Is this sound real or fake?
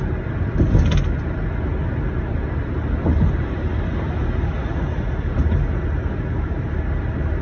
real